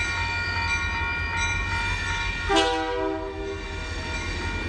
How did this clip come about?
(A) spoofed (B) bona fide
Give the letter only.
B